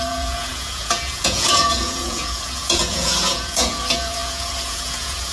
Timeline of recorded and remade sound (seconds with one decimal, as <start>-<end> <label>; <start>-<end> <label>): 0.0-5.3 remade

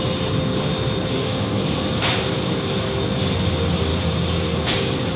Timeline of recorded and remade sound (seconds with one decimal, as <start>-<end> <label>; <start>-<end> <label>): 0.0-1.2 recorded; 1.2-2.1 remade; 2.1-5.2 recorded

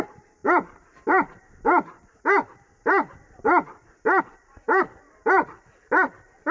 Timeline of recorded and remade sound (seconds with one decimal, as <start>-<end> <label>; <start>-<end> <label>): 0.0-6.5 remade

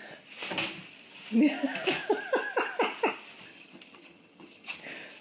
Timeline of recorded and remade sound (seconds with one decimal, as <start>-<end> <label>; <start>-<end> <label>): 0.0-3.5 recorded; 3.5-4.8 remade; 4.8-5.2 recorded